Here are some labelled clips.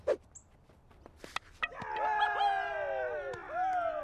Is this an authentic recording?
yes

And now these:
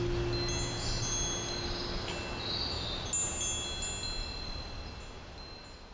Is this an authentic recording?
yes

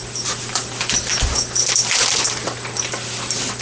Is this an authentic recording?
yes